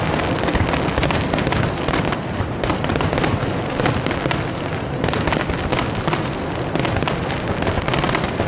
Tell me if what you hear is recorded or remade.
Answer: recorded